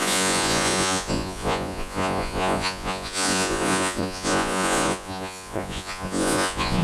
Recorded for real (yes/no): no